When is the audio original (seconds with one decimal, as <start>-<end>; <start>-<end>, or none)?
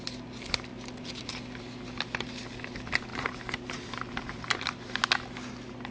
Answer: 0.0-3.1; 5.0-5.9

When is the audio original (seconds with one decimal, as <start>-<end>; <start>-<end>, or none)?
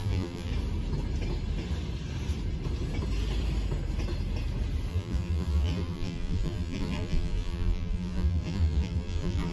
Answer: 0.5-4.9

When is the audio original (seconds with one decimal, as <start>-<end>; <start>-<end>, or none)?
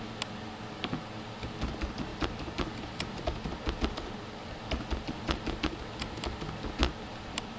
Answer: 0.0-2.1; 4.8-6.8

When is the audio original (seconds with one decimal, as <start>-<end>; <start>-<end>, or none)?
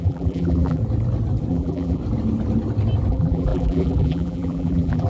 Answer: 0.8-1.5; 2.0-3.1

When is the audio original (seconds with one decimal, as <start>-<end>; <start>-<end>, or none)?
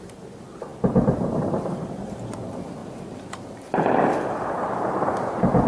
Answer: 2.8-5.7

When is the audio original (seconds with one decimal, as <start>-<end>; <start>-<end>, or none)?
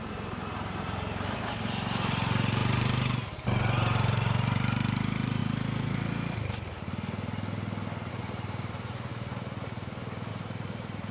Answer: 5.4-8.1; 9.1-10.3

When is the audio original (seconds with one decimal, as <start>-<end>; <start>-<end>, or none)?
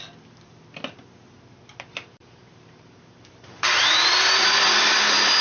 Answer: 0.0-2.2; 4.6-5.4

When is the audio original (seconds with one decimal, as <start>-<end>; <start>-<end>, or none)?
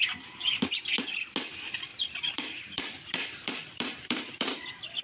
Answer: 0.0-1.9